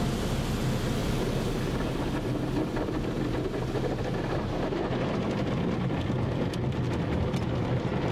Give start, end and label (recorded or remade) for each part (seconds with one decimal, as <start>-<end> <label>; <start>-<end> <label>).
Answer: 0.0-8.1 recorded